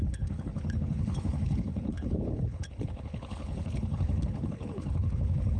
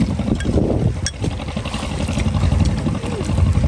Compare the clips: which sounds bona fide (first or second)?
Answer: second